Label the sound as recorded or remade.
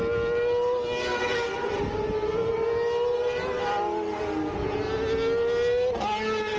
recorded